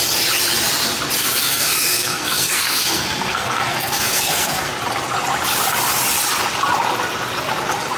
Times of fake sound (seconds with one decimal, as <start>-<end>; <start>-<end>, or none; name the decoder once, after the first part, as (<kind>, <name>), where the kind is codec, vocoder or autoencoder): 1.2-4.7 (codec, SNAC)